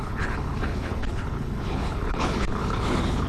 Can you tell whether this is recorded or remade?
remade